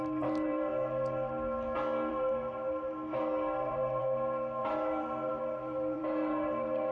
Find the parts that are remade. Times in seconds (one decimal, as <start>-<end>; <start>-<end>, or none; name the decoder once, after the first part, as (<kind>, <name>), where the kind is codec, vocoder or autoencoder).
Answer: 0.0-0.7 (vocoder, BigVGAN v2); 2.1-4.0; 4.6-6.9